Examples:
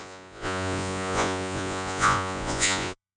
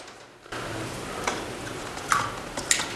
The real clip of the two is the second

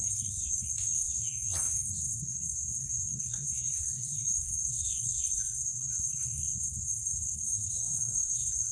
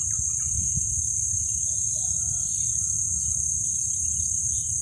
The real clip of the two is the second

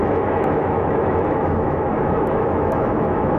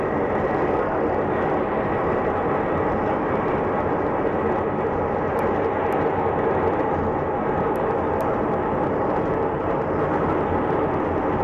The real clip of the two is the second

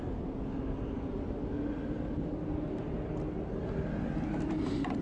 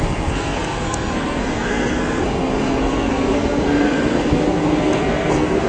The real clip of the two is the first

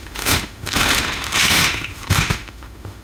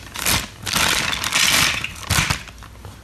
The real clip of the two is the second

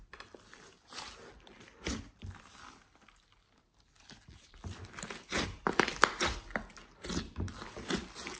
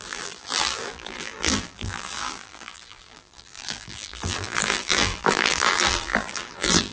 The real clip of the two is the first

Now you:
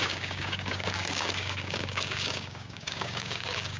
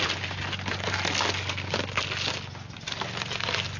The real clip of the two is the second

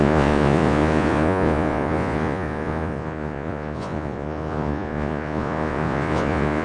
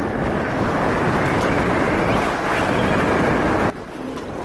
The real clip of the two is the second